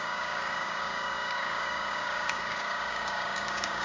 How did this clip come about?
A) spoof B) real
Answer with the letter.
A